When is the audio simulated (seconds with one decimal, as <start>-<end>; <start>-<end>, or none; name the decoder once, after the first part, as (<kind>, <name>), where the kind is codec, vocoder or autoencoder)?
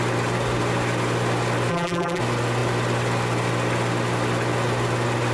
1.7-2.2 (vocoder, BigVGAN v2)